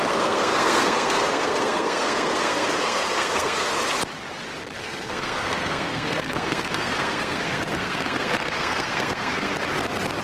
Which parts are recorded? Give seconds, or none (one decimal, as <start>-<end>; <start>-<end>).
3.7-4.8; 9.5-10.2